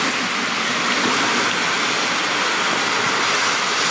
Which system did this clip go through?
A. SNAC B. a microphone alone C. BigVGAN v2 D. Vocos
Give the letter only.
B